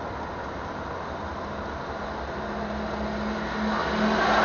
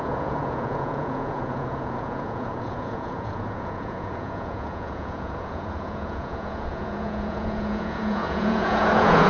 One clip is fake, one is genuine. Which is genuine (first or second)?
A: first